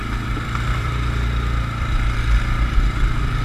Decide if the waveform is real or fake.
fake